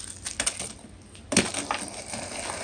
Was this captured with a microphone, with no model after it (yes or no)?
yes